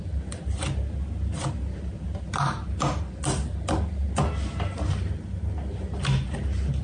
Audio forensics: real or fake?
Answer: real